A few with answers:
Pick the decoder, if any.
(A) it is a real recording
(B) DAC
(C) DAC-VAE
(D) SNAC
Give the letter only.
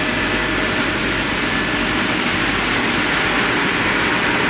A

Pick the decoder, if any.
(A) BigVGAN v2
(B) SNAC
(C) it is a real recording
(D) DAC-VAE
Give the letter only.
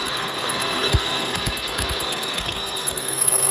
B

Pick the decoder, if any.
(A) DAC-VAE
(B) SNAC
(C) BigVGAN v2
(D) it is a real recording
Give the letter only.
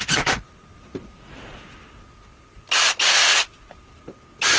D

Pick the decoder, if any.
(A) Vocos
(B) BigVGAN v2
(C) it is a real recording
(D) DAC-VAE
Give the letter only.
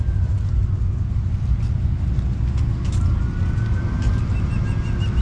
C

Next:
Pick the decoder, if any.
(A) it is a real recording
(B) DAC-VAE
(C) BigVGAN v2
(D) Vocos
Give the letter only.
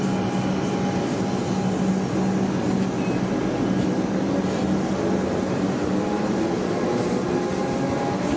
A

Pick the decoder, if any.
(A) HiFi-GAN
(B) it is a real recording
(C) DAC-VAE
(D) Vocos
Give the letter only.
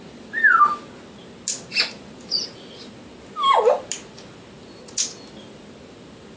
B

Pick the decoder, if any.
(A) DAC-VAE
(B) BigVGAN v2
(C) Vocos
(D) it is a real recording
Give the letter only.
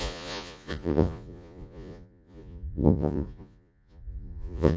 C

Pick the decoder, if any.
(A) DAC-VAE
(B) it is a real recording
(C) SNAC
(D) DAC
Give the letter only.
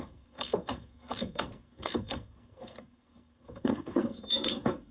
C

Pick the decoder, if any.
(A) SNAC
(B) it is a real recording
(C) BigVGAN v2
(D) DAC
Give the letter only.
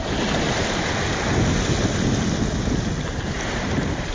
B